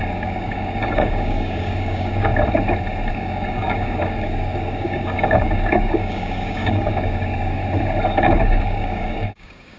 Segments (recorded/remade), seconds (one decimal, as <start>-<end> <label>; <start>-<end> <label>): 0.0-2.3 remade; 2.3-3.1 recorded; 3.1-7.6 remade; 7.6-8.2 recorded; 8.2-9.8 remade